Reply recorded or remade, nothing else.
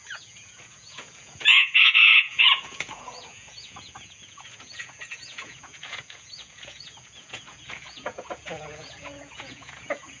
remade